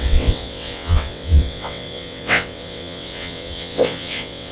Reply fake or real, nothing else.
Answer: fake